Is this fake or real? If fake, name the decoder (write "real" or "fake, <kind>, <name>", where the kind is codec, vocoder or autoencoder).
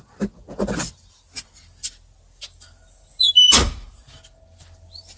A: real